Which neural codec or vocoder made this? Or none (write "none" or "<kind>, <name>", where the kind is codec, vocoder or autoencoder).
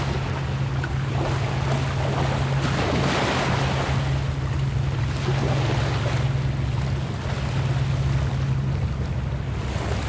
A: none